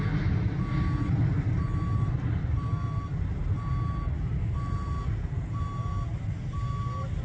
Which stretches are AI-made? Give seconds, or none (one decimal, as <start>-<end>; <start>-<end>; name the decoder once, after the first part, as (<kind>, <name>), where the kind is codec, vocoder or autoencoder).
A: none